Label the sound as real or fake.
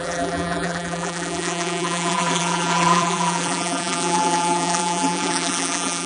fake